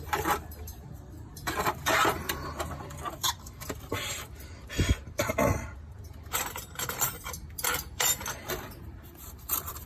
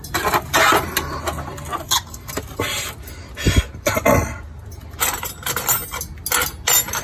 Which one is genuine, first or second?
second